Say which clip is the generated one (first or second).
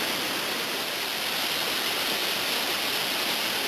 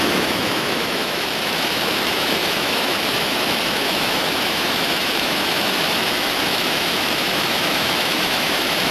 second